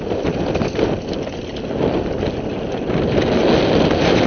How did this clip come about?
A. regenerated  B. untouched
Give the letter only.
B